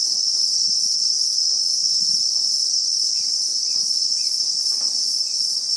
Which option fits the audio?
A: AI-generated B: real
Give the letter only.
A